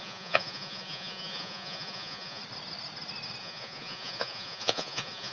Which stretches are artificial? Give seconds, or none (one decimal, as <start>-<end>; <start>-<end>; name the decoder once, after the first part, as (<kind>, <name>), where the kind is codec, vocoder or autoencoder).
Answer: 0.0-2.4 (vocoder, Vocos); 3.4-5.3